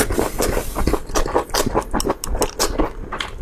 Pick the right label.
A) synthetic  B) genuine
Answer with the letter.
B